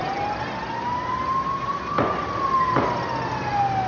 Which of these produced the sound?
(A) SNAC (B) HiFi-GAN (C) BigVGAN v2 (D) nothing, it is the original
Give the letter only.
D